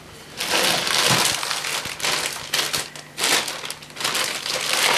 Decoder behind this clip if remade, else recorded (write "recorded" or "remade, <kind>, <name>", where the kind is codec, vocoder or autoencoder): recorded